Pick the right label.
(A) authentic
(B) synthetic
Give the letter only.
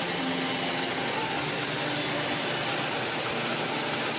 A